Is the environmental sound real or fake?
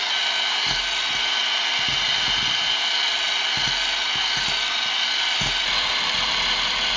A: real